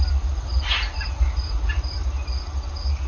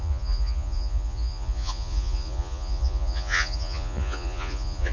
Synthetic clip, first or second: second